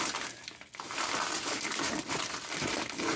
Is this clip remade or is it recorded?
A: recorded